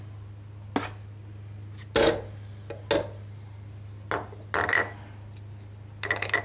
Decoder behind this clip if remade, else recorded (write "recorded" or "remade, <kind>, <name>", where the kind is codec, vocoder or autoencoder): recorded